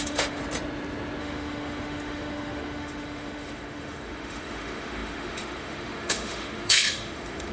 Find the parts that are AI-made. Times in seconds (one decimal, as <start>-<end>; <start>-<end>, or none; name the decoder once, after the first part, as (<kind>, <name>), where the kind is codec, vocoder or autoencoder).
0.0-0.4 (autoencoder, DAC-VAE); 1.2-7.5